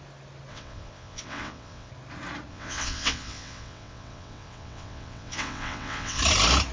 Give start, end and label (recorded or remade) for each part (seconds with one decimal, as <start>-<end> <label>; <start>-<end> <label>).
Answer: 0.0-0.5 recorded; 0.5-1.9 remade; 1.9-2.5 recorded; 2.5-6.2 remade; 6.2-6.7 recorded